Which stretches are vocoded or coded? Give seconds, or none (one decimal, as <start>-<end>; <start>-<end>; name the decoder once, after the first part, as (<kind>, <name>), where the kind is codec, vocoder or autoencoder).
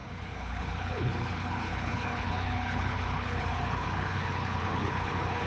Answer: 0.0-5.5 (codec, HILCodec)